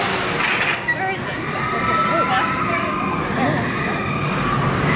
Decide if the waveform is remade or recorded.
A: recorded